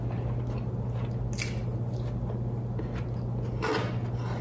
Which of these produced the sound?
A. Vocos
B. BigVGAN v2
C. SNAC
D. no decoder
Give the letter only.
D